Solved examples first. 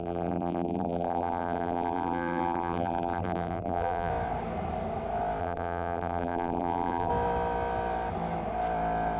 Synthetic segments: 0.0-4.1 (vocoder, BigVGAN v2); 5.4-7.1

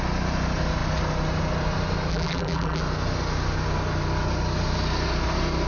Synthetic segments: 2.1-2.8 (vocoder, BigVGAN v2)